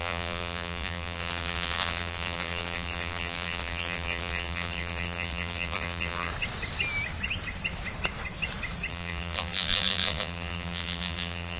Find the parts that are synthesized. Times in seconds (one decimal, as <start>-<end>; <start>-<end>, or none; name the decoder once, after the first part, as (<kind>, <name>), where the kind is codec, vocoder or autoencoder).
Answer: 0.0-6.3 (vocoder, BigVGAN v2); 8.9-11.6